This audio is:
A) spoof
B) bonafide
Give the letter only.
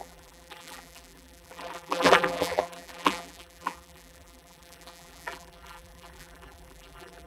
A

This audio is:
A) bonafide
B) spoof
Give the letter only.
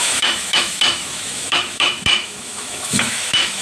B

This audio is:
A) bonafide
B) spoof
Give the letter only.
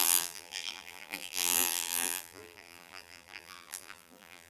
B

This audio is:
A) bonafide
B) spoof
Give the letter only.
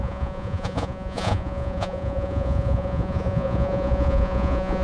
B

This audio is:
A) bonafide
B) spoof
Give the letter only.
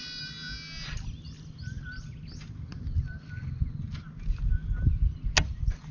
A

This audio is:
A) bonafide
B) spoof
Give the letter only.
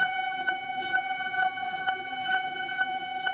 B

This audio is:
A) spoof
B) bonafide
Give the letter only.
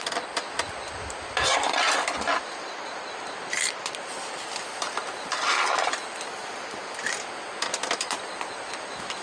B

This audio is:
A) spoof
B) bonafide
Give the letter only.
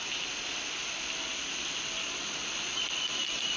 B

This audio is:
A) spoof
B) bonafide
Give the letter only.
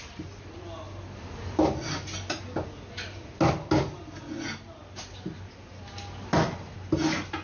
B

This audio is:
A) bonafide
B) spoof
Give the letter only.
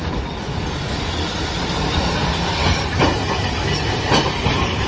A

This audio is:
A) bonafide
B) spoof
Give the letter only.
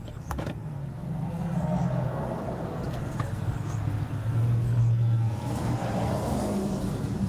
B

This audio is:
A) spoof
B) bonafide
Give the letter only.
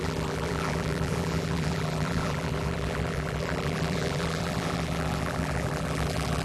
A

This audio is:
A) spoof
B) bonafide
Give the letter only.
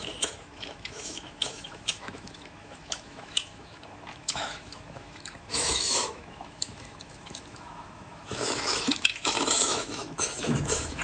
A